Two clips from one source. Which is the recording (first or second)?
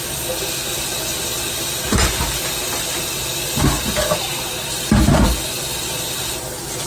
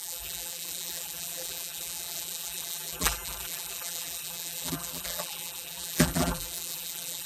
first